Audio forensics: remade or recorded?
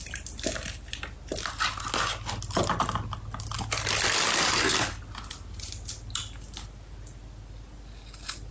recorded